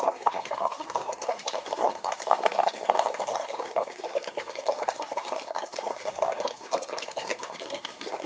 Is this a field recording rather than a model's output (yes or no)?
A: no